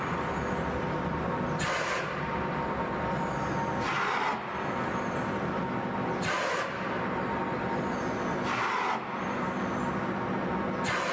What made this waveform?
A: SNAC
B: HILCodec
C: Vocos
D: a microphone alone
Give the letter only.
D